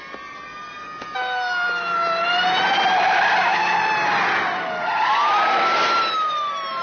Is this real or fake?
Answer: real